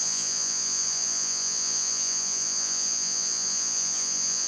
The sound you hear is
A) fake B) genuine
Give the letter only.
A